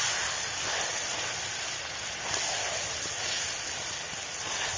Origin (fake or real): real